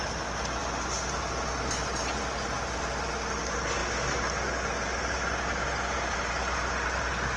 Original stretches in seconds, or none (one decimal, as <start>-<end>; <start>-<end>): 0.0-7.4